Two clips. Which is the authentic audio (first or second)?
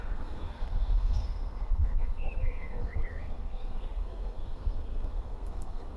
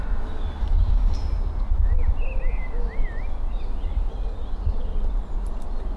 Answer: second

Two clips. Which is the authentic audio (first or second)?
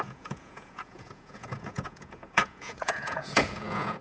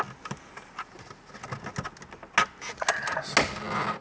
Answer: second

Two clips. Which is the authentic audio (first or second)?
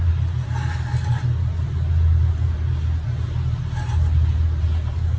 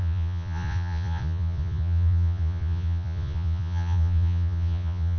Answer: first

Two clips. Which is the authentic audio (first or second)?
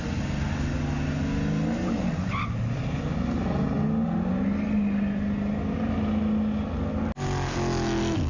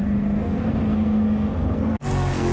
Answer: first